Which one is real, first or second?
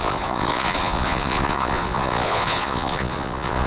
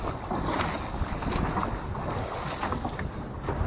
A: second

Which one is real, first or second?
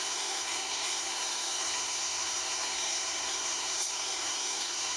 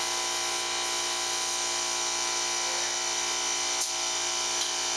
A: second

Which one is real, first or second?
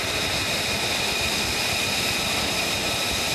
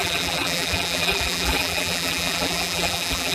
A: first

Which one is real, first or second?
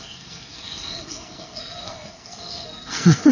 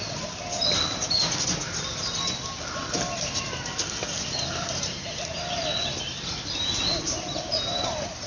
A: second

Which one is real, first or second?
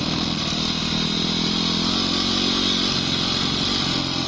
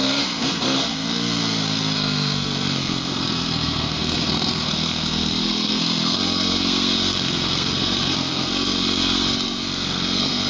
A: first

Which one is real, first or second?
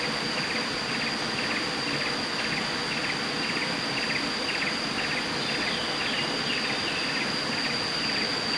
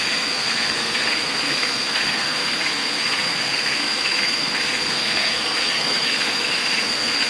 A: first